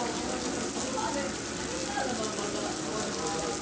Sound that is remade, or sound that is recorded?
recorded